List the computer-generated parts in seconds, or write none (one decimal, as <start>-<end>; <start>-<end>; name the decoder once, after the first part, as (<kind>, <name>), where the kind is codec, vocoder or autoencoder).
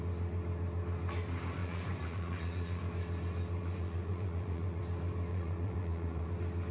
1.6-2.8 (vocoder, Vocos); 3.6-4.8; 5.3-6.3